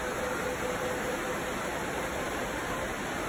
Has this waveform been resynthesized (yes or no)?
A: no